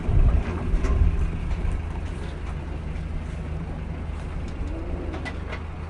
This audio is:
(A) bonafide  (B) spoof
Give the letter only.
A